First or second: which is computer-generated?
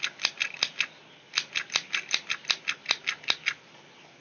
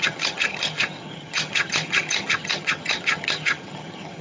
second